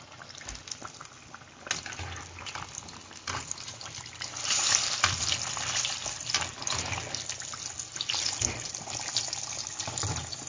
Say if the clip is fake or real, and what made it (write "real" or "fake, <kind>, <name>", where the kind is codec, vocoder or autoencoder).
real